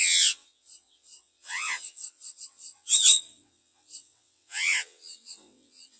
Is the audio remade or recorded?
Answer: remade